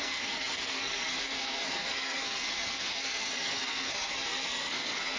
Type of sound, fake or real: fake